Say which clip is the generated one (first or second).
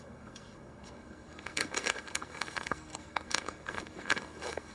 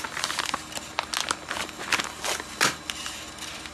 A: first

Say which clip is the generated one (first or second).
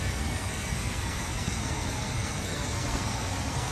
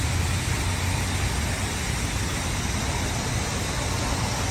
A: first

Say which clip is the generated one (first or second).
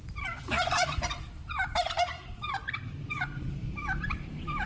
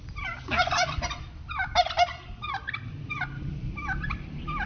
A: first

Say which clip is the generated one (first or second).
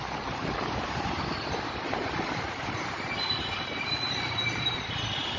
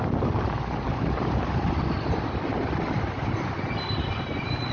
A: first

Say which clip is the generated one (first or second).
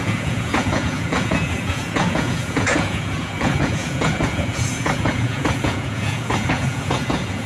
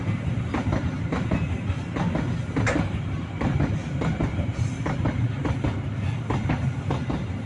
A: first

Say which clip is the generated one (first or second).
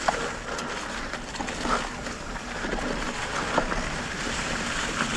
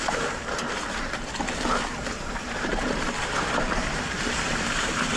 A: second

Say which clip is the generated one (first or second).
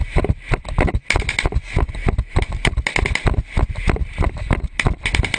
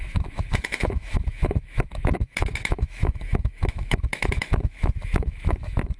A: second